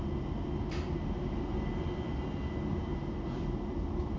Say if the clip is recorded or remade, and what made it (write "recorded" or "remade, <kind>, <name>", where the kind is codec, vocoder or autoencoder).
remade, vocoder, BigVGAN v2